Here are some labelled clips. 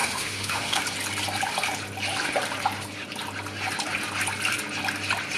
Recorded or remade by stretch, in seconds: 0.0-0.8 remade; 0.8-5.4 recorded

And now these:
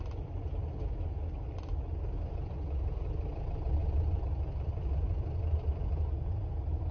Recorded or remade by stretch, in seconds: 0.0-6.9 recorded

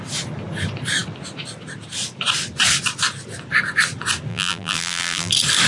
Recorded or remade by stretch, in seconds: 0.0-4.3 recorded; 4.3-5.3 remade; 5.3-5.7 recorded

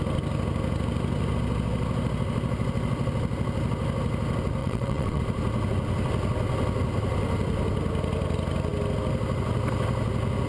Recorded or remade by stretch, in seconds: 0.0-4.6 recorded; 4.6-5.2 remade; 5.2-10.5 recorded

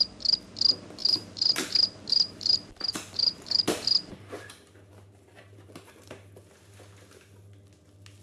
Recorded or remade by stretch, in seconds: 0.0-1.0 recorded; 1.0-5.9 remade; 5.9-8.2 recorded